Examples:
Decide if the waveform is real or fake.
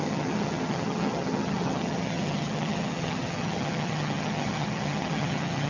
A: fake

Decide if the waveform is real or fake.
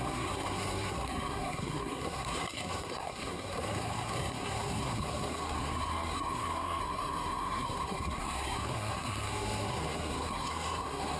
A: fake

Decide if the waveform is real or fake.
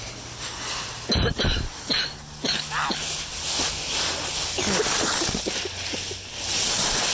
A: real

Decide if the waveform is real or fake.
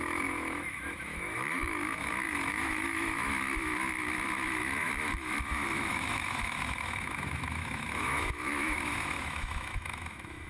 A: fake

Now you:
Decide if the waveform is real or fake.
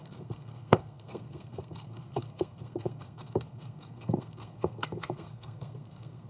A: fake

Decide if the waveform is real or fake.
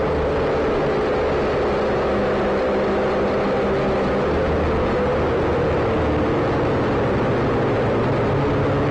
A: real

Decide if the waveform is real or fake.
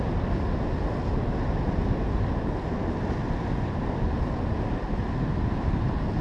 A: real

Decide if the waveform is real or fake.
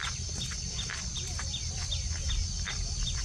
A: real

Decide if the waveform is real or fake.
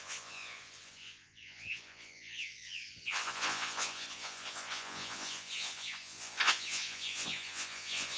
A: fake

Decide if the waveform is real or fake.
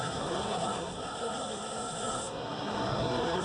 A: fake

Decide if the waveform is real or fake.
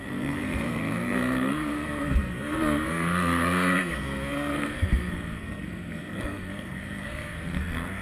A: fake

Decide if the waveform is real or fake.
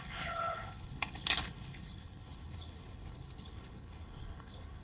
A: fake